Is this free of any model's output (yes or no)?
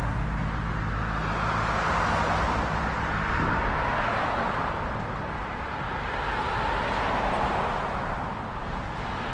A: yes